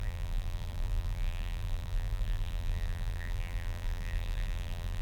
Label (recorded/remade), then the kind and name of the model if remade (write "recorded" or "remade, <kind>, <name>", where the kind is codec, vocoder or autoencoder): remade, vocoder, BigVGAN v2